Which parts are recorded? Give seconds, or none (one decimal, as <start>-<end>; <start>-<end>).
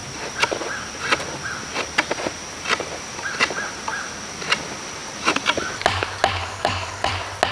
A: 0.0-6.4; 7.1-7.5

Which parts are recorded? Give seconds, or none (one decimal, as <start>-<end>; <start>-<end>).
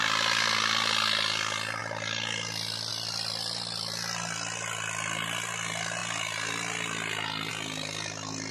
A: 0.0-8.5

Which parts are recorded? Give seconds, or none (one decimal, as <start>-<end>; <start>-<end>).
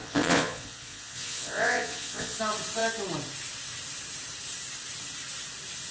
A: 2.4-5.9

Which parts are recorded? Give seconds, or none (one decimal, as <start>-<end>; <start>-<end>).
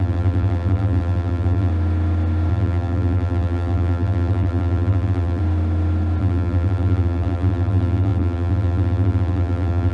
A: 1.7-2.5; 5.4-6.2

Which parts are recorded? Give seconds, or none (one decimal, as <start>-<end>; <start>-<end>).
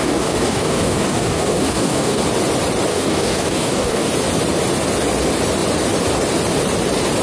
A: 2.2-2.9; 4.1-7.2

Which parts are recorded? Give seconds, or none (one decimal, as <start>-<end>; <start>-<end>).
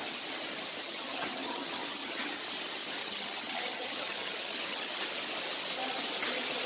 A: 0.0-0.8; 2.4-3.0; 5.0-6.7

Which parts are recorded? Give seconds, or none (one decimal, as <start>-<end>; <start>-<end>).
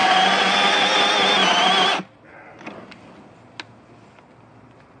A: 0.0-5.0